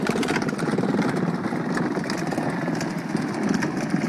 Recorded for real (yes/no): yes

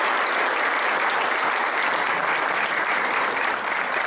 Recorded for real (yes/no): yes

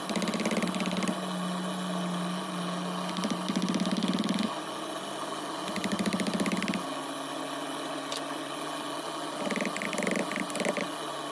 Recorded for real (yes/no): yes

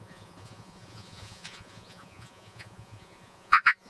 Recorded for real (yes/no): no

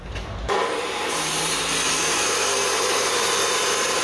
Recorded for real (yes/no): no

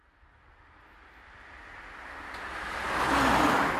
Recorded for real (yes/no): yes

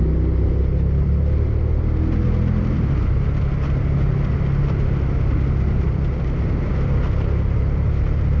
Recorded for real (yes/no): yes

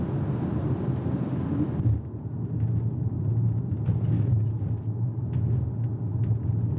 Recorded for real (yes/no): yes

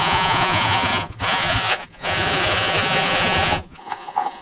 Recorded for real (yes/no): no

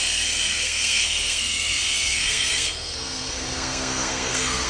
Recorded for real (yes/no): no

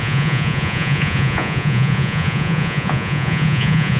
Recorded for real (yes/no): no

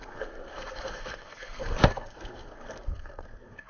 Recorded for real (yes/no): no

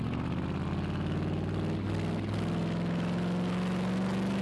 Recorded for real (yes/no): yes